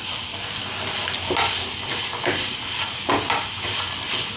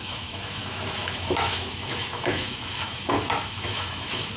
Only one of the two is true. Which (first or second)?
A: first